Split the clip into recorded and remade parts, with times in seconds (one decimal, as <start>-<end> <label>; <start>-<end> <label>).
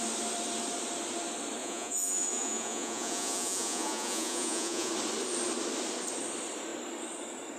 0.0-1.6 recorded; 1.6-4.9 remade; 4.9-7.6 recorded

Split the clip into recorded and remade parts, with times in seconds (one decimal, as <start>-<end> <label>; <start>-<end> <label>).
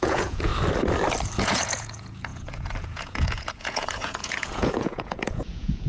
0.0-0.5 remade; 0.5-1.4 recorded; 1.4-5.9 remade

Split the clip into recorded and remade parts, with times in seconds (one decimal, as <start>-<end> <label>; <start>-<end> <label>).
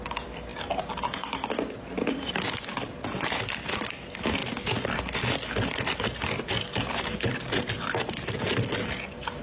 0.0-9.4 recorded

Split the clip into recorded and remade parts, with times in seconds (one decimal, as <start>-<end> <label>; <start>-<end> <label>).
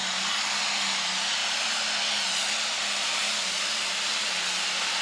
0.0-0.6 remade; 0.6-5.0 recorded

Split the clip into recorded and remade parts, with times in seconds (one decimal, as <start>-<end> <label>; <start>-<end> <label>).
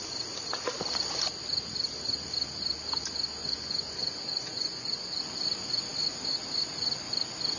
0.0-3.4 recorded; 3.4-5.2 remade; 5.2-7.6 recorded